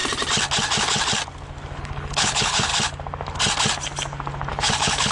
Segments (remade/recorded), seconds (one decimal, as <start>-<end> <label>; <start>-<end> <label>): 0.0-1.8 recorded; 1.8-2.7 remade; 2.7-4.5 recorded; 4.5-5.1 remade